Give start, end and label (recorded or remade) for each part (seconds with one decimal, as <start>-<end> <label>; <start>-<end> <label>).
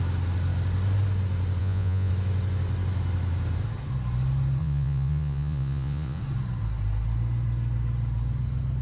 0.0-1.6 recorded; 1.6-2.1 remade; 2.1-4.6 recorded; 4.6-6.2 remade; 6.2-8.8 recorded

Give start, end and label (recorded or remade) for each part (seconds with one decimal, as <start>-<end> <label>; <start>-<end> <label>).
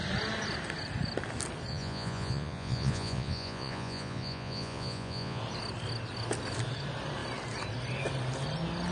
0.0-1.7 recorded; 1.7-5.4 remade; 5.4-8.9 recorded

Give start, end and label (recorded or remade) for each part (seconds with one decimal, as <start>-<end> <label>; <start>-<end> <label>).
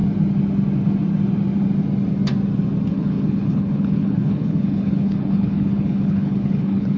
0.0-2.9 recorded; 2.9-7.0 remade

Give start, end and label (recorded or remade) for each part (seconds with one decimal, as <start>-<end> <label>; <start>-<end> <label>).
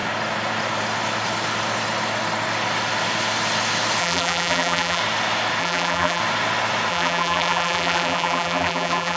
0.0-4.0 recorded; 4.0-5.0 remade; 5.0-5.6 recorded; 5.6-6.2 remade; 6.2-6.9 recorded; 6.9-9.2 remade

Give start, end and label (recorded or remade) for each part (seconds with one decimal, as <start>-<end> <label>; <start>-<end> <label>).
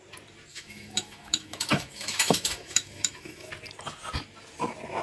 0.0-0.5 recorded; 0.5-3.5 remade; 3.5-5.0 recorded